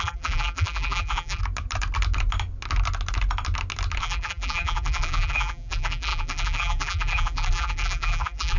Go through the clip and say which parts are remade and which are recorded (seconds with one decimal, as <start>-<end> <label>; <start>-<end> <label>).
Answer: 0.0-1.4 remade; 1.4-4.0 recorded; 4.0-8.6 remade